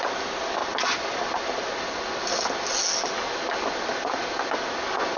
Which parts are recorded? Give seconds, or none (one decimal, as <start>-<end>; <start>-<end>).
0.0-5.2

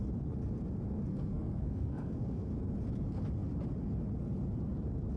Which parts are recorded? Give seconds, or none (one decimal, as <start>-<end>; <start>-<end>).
0.0-1.1; 2.5-5.2

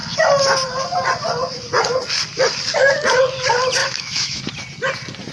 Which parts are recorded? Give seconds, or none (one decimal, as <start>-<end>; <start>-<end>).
0.0-3.8; 4.4-5.3

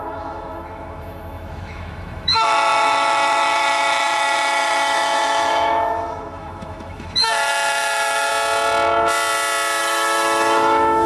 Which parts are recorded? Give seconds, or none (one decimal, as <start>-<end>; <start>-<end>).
8.3-9.8

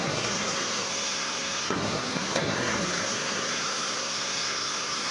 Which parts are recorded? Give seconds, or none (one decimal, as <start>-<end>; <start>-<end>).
none